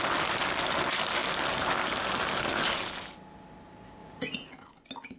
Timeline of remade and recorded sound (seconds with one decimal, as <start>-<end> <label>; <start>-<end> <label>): 0.0-4.0 recorded; 4.0-4.5 remade; 4.5-5.2 recorded